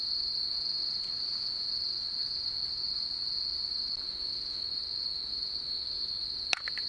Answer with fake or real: real